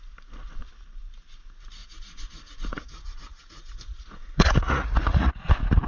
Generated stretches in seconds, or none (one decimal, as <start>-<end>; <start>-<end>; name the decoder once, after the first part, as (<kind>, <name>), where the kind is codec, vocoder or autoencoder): 1.8-5.3 (vocoder, Vocos)